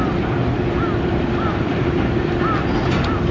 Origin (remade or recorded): recorded